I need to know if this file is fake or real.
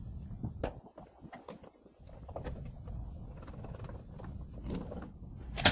real